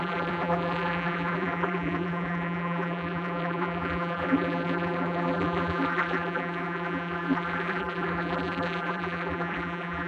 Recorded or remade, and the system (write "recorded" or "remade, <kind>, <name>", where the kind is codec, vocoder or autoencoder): remade, vocoder, BigVGAN v2